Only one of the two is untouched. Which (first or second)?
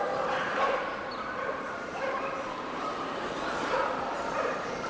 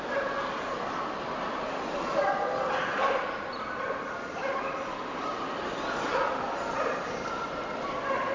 second